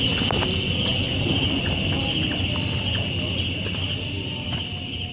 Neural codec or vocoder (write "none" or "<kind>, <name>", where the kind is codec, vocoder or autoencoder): none